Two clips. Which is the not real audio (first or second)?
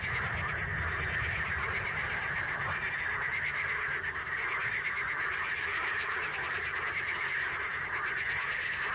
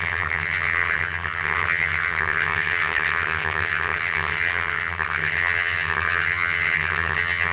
second